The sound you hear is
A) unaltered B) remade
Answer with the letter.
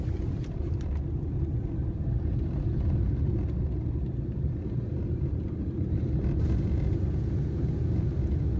A